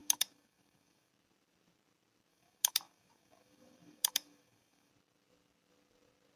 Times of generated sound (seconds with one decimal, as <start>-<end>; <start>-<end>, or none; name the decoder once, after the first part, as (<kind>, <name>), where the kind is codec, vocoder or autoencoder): 0.0-1.1 (codec, DAC); 2.3-4.9